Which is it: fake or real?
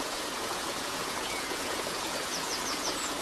fake